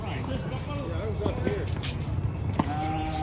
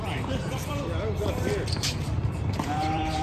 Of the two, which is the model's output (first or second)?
second